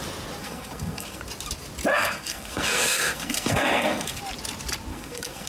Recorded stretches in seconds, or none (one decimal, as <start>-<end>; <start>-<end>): 0.0-0.4; 1.2-1.9; 4.2-4.9